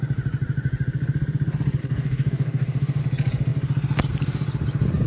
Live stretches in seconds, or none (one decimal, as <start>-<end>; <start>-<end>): 0.0-1.8; 3.0-5.1